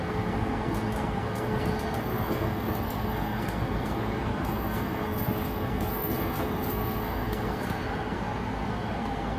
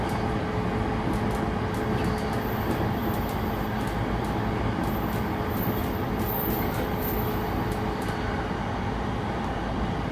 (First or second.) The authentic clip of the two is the second